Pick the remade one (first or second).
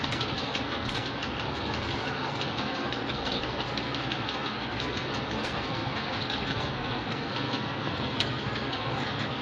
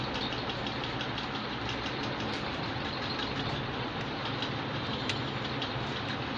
first